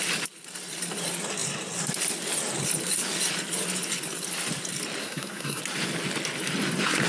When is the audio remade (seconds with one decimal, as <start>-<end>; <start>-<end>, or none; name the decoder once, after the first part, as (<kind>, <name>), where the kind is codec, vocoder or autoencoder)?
5.0-5.6 (codec, SNAC)